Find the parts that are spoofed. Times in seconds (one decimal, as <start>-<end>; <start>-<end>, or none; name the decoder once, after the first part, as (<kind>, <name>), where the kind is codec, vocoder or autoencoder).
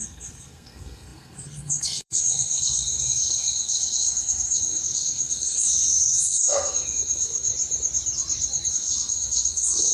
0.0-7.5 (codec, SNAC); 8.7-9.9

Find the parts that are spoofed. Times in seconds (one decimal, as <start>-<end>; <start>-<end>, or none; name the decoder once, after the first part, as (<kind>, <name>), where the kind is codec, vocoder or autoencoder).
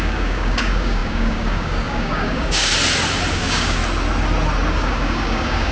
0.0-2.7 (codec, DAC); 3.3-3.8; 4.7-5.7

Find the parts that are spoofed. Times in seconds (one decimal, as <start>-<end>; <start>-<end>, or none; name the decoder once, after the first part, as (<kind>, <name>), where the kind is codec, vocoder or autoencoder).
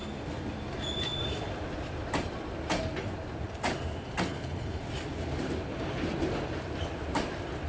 4.3-4.8 (codec, HILCodec)